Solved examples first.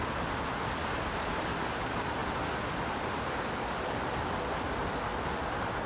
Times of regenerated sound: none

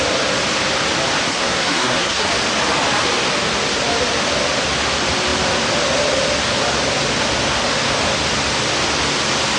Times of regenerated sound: 1.3-2.3 (codec, SNAC)

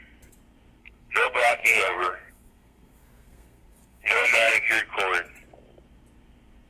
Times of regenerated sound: 0.8-4.8 (codec, SNAC)